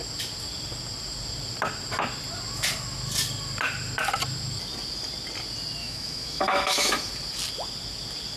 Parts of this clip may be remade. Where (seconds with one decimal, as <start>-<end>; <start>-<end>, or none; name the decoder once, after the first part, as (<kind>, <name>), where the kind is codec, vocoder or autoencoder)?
5.8-7.1 (autoencoder, DAC-VAE)